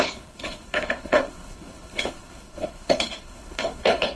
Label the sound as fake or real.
fake